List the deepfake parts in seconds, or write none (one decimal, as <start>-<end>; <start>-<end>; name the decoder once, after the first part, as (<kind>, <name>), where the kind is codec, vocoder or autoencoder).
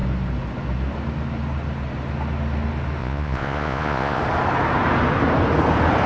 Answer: 3.0-4.2 (vocoder, Vocos)